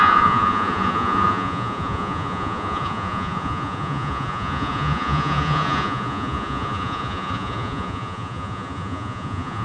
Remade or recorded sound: remade